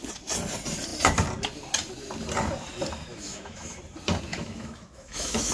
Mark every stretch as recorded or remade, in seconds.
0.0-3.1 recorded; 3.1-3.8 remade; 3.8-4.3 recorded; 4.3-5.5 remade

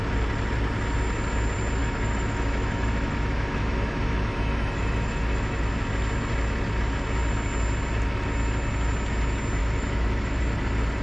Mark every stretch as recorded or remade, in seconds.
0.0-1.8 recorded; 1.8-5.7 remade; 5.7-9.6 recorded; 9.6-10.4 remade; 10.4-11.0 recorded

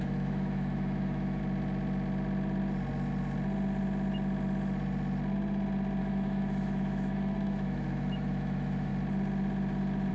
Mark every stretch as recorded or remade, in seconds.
0.0-1.4 remade; 1.4-6.0 recorded; 6.0-8.9 remade; 8.9-10.1 recorded

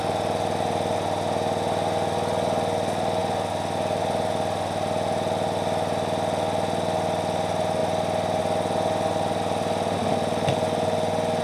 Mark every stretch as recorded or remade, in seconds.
0.0-11.4 recorded

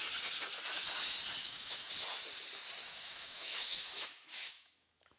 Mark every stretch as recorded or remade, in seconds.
0.0-1.4 recorded; 1.4-1.9 remade; 1.9-2.8 recorded; 2.8-5.2 remade